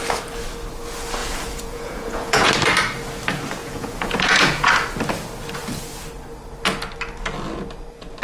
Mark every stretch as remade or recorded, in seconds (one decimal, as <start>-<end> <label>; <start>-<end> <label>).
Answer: 0.0-1.2 recorded; 1.2-2.5 remade; 2.5-3.6 recorded; 3.6-4.7 remade; 4.7-8.2 recorded